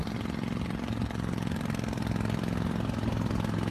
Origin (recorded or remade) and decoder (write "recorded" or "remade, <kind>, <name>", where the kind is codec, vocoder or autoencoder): recorded